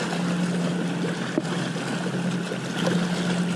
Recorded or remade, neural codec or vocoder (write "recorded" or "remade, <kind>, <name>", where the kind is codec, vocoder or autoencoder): recorded